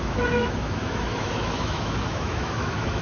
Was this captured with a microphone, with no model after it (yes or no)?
no